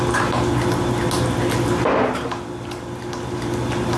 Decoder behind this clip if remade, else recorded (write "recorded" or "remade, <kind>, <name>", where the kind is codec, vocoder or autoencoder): recorded